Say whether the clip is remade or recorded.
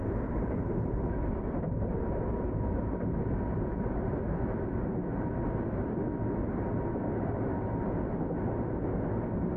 recorded